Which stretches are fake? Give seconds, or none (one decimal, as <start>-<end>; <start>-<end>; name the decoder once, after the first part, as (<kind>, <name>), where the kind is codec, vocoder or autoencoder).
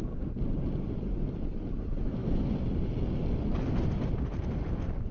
none